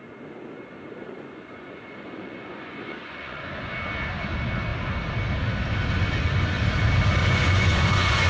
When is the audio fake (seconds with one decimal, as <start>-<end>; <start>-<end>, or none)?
1.0-3.5; 7.2-8.3